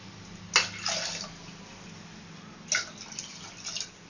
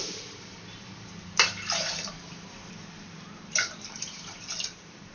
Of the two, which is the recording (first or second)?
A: first